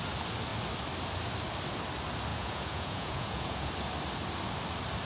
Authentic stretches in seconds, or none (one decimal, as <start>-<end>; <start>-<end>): 0.0-2.3; 3.7-5.0